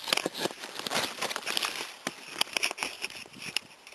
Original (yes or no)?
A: yes